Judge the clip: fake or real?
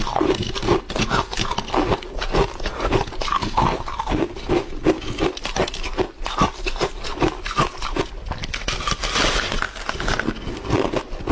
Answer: real